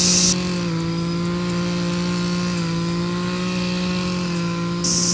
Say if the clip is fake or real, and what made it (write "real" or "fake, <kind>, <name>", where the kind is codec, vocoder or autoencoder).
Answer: real